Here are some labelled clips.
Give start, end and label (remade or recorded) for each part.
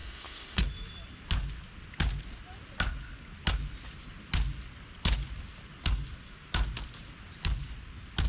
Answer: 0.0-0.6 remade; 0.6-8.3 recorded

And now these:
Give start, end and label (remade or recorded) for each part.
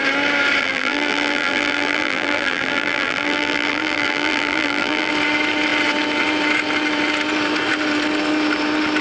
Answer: 0.0-0.6 recorded; 0.6-5.1 remade; 5.1-9.0 recorded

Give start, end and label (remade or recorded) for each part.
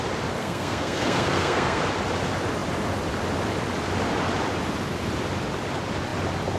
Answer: 0.0-0.4 recorded; 0.4-1.8 remade; 1.8-6.6 recorded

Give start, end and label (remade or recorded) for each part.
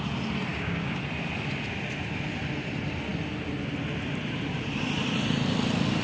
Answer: 0.0-0.5 recorded; 0.5-1.0 remade; 1.0-6.0 recorded